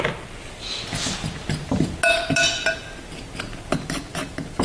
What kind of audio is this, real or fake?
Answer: real